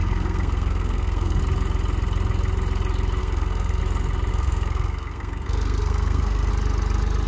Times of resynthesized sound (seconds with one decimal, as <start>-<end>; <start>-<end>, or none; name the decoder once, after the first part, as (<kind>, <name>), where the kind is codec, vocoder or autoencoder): 0.0-1.4 (codec, SNAC); 3.2-3.8; 4.3-6.5